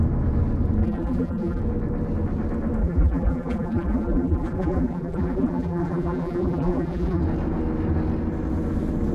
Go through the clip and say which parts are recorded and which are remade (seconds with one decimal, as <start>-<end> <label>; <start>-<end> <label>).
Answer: 0.0-0.8 recorded; 0.8-1.6 remade; 1.6-2.8 recorded; 2.8-7.2 remade; 7.2-9.1 recorded